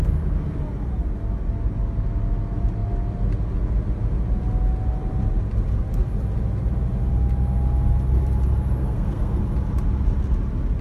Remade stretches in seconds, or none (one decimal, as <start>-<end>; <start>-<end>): 8.8-9.4